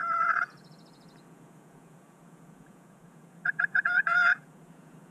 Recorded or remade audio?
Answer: remade